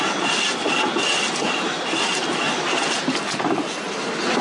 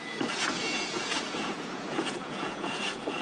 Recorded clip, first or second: first